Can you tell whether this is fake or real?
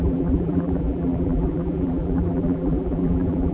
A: fake